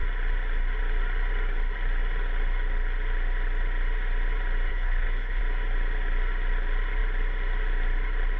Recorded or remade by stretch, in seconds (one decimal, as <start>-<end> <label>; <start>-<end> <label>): 0.0-4.7 recorded; 4.7-5.4 remade; 5.4-8.4 recorded